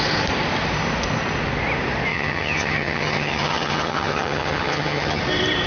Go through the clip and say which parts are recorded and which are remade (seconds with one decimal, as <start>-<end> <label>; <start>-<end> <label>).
0.0-2.1 recorded; 2.1-5.2 remade; 5.2-5.7 recorded